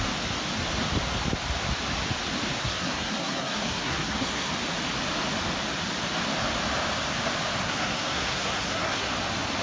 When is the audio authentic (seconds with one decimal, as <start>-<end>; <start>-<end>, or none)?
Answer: 0.0-2.6; 4.5-7.6; 9.1-9.6

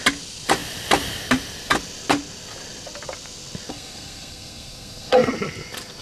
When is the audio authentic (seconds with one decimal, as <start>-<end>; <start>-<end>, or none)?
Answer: 0.0-3.7; 5.3-6.0

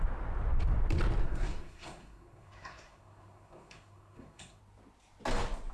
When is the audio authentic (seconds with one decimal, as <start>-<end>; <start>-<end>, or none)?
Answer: 0.0-1.2; 4.6-5.7

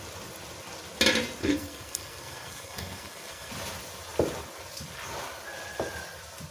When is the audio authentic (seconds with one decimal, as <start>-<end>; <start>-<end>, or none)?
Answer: 0.0-1.4; 3.5-6.5

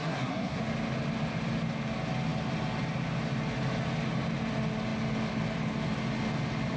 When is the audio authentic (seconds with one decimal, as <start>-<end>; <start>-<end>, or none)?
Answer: 0.6-6.8

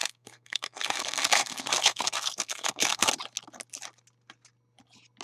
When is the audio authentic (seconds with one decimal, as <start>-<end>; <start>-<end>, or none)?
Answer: 3.1-5.2

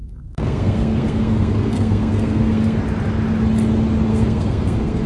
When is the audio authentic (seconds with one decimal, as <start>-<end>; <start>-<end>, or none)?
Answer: 2.8-4.1